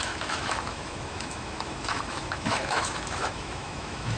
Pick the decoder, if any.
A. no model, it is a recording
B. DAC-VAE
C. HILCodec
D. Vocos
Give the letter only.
B